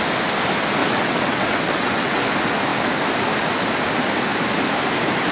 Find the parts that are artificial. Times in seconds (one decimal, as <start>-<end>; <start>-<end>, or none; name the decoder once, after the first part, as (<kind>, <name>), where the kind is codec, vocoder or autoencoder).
0.8-2.2 (vocoder, WaveNeXt)